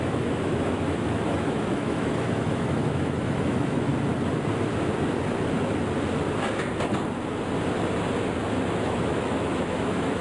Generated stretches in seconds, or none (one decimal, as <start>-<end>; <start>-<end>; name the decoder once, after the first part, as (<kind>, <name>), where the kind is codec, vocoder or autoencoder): 0.0-3.9 (autoencoder, DAC-VAE); 8.8-10.2